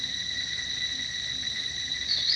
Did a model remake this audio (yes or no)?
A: no